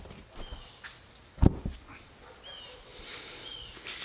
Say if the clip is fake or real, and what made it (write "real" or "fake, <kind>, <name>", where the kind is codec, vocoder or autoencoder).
real